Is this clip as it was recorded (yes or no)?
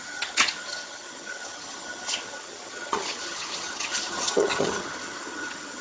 no